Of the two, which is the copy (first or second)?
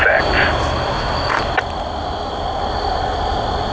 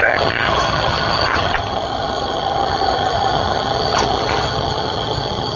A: second